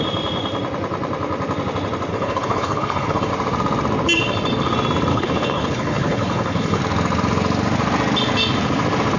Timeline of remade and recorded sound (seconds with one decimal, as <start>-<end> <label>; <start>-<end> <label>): 0.0-2.1 recorded; 2.1-3.3 remade; 3.3-5.1 recorded; 5.1-6.8 remade; 6.8-9.2 recorded